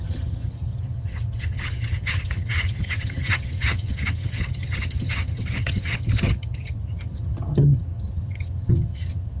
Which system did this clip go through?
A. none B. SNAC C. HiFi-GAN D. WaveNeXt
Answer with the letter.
C